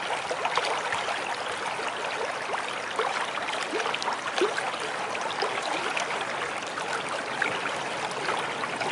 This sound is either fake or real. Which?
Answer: real